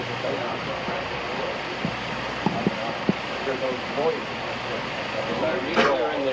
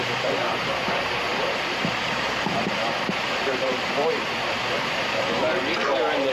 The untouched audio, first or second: first